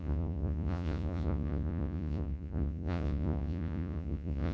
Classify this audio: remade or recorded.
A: remade